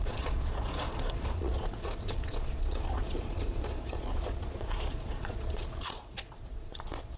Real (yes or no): no